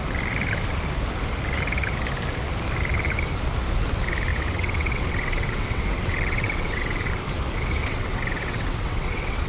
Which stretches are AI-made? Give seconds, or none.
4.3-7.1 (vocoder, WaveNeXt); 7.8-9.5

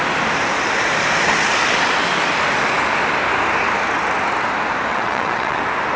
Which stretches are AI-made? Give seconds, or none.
4.9-5.6 (vocoder, WaveNeXt)

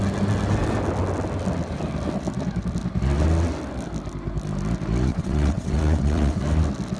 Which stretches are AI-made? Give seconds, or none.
5.1-6.4 (vocoder, WaveNeXt)

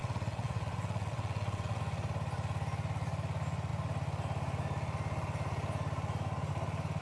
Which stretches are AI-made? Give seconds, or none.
0.0-1.8 (vocoder, WaveNeXt)

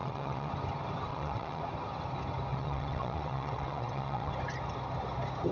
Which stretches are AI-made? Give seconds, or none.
0.0-0.5 (vocoder, WaveNeXt); 1.1-1.6; 2.5-4.3